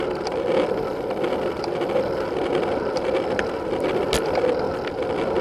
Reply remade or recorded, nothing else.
recorded